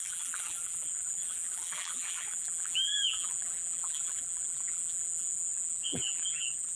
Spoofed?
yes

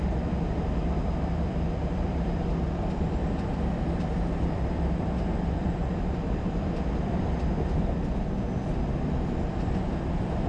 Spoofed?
yes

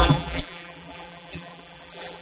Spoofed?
yes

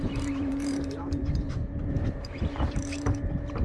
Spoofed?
yes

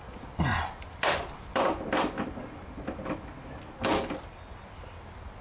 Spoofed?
no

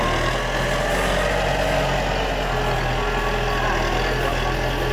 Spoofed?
no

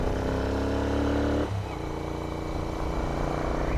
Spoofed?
no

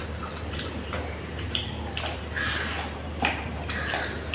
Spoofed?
yes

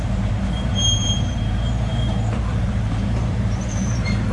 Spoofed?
yes